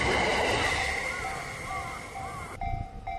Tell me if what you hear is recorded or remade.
remade